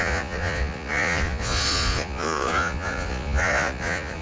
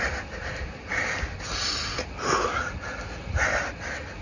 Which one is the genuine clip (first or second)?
second